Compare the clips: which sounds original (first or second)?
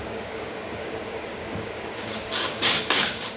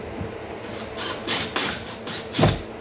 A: second